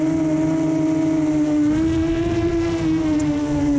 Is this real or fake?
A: real